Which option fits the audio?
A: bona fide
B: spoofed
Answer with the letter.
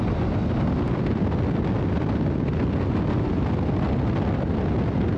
A